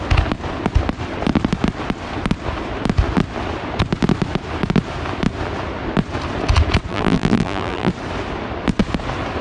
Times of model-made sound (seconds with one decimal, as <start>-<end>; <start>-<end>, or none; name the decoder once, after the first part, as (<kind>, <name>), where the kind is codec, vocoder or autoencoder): 6.9-7.9 (vocoder, BigVGAN v2)